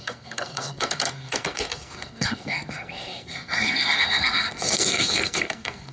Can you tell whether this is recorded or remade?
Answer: remade